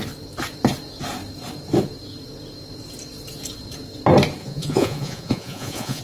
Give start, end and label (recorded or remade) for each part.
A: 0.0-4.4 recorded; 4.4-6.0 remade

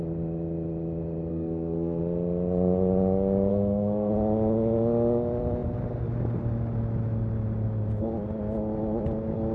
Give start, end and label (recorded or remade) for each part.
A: 0.0-1.3 recorded; 1.3-2.0 remade; 2.0-3.5 recorded; 3.5-4.1 remade; 4.1-9.5 recorded

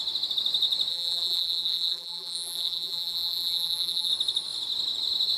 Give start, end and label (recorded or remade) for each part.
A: 0.0-0.9 recorded; 0.9-4.1 remade; 4.1-5.4 recorded

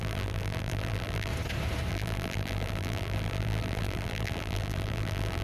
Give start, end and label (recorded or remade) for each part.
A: 0.0-1.3 remade; 1.3-1.9 recorded; 1.9-5.4 remade

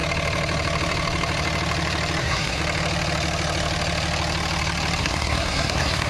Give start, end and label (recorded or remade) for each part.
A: 0.0-2.2 recorded; 2.2-2.6 remade; 2.6-5.0 recorded; 5.0-6.1 remade

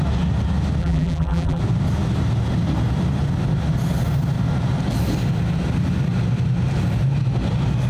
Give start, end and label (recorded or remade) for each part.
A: 0.0-0.8 recorded; 0.8-1.6 remade; 1.6-7.9 recorded

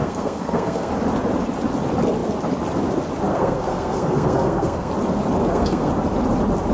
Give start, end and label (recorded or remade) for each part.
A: 0.0-0.9 remade; 0.9-3.3 recorded; 3.3-4.9 remade; 4.9-5.4 recorded; 5.4-5.9 remade; 5.9-6.7 recorded

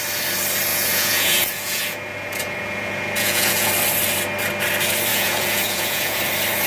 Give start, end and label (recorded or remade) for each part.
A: 0.0-0.7 recorded; 0.7-3.7 remade; 3.7-5.1 recorded; 5.1-6.2 remade; 6.2-6.7 recorded